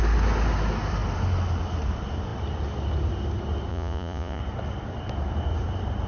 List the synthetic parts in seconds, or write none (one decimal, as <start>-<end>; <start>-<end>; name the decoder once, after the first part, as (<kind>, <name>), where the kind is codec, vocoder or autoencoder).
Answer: 3.7-4.4 (vocoder, Vocos)